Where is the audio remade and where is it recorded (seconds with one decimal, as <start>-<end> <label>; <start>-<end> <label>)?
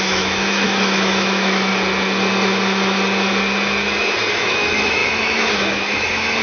0.0-1.7 remade; 1.7-4.3 recorded; 4.3-6.4 remade